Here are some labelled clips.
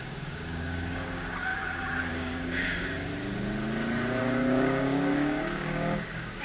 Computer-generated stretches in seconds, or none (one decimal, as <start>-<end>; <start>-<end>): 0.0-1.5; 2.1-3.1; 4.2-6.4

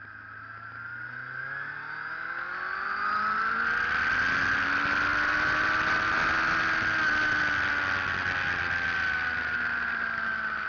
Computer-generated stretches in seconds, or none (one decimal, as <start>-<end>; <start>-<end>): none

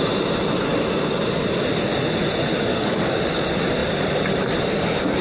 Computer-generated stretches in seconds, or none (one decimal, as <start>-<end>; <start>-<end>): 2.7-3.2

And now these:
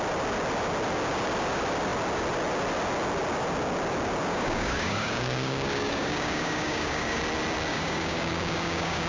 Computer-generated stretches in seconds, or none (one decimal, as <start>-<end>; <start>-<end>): 4.3-7.2; 7.7-9.1

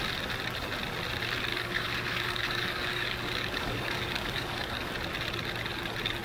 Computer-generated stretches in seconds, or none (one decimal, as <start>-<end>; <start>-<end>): 1.5-4.9

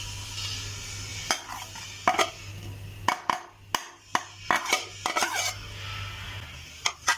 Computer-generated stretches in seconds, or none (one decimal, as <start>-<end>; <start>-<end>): none

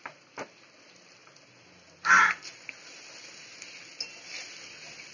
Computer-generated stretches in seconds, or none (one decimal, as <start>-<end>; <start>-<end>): none

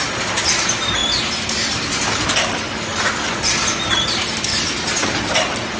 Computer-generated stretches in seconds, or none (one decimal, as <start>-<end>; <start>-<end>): none